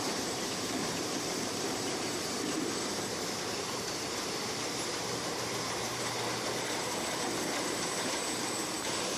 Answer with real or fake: fake